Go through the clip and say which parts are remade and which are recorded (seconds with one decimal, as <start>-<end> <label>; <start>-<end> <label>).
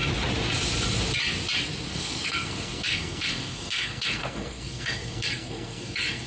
0.0-1.9 recorded; 1.9-6.3 remade